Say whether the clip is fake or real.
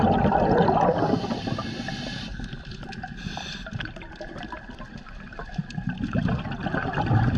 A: real